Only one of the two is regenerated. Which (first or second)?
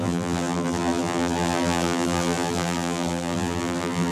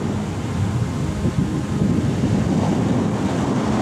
first